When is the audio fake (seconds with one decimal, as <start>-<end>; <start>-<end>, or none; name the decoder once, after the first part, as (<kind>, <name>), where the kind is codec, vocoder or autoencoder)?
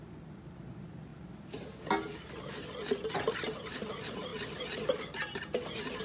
none